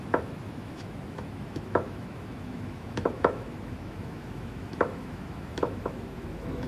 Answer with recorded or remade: remade